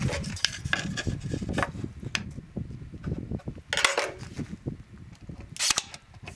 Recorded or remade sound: recorded